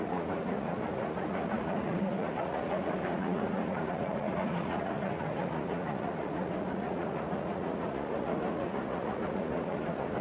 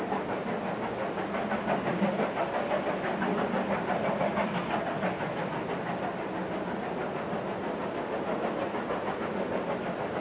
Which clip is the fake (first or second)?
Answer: first